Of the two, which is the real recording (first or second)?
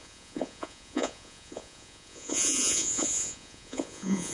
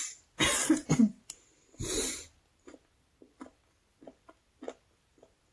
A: second